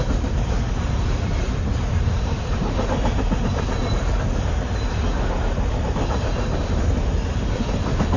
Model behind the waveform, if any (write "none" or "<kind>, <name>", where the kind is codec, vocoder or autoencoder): vocoder, BigVGAN v2